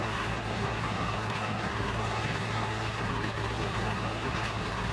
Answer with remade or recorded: remade